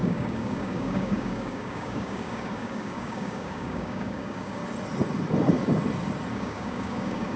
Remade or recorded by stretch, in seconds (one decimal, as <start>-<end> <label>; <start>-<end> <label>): 0.0-4.6 remade; 4.6-6.3 recorded; 6.3-7.4 remade